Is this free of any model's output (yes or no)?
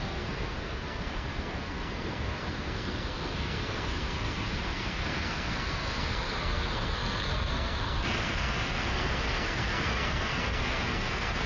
no